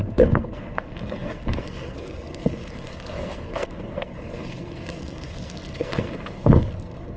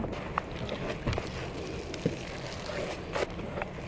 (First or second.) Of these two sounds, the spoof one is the first